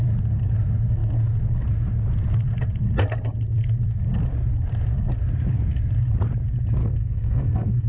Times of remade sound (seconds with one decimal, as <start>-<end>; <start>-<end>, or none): 6.8-7.9